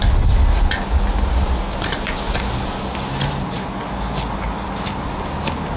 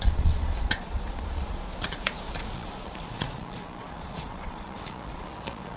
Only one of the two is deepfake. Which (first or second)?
second